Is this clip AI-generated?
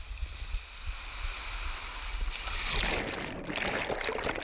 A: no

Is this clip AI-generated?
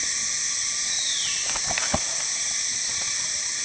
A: no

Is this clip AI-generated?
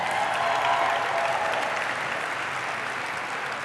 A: no